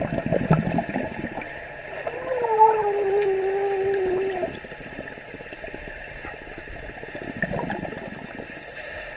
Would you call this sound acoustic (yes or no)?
yes